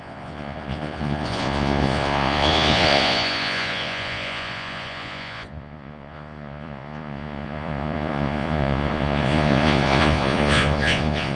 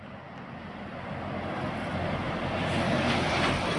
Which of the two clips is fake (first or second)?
first